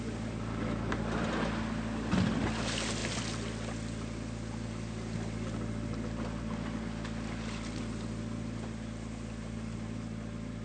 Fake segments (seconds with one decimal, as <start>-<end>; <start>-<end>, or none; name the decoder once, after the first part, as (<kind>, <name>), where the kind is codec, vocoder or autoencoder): none